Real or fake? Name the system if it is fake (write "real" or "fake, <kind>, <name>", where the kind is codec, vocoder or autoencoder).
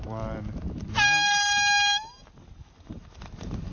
real